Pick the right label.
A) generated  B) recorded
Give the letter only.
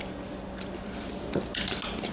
B